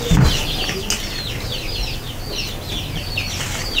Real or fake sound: real